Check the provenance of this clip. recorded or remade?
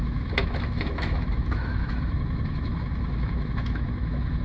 remade